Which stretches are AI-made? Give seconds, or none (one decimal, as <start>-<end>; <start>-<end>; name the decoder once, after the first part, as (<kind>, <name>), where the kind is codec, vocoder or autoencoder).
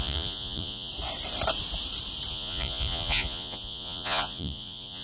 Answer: 0.0-0.9 (vocoder, Vocos); 2.3-5.0